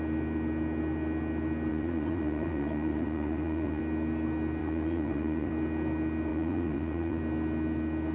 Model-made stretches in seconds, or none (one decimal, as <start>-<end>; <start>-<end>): 1.7-3.8; 4.6-5.5; 6.3-7.2